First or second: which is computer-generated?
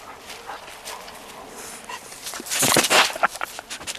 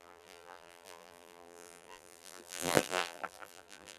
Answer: second